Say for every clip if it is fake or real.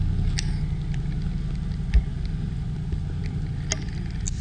real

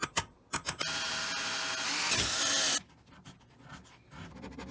real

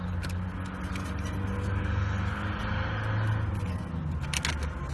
real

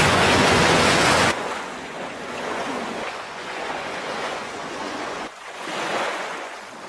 fake